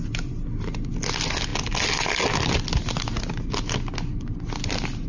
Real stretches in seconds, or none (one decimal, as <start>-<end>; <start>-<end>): 0.0-5.1